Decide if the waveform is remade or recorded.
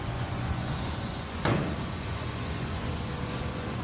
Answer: remade